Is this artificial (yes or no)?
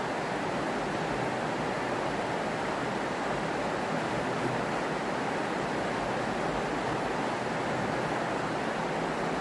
no